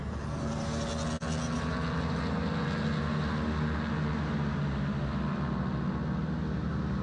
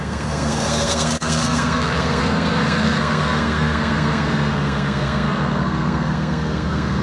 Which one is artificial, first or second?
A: second